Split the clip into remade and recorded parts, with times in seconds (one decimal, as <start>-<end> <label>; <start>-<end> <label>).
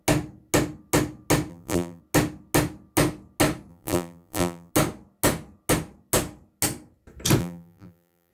0.0-1.5 recorded; 1.5-2.0 remade; 2.0-3.7 recorded; 3.7-4.7 remade; 4.7-7.4 recorded; 7.4-8.3 remade